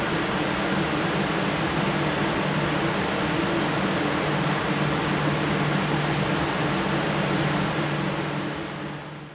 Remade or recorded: recorded